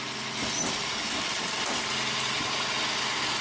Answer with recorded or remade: recorded